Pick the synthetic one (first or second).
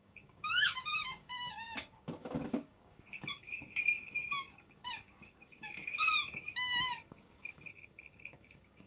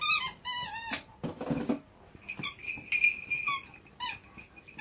first